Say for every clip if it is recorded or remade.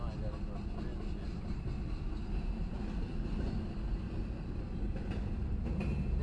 recorded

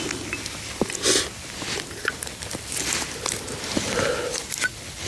recorded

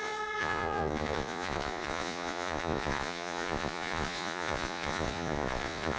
remade